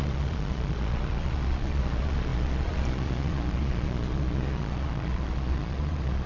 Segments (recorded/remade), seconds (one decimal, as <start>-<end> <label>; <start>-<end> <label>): 0.0-6.3 remade